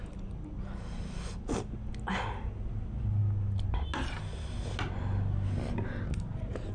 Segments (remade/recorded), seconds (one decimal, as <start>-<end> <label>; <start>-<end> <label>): 0.0-6.7 recorded